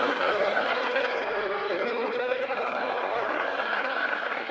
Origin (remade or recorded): remade